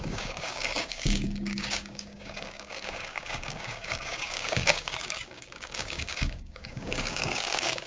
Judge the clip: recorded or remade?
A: remade